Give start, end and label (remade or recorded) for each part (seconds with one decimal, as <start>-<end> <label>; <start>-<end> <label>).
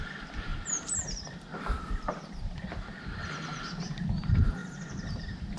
0.0-0.5 recorded; 0.5-3.0 remade; 3.0-4.6 recorded; 4.6-5.6 remade